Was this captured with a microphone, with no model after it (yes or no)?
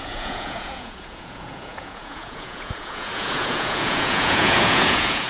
no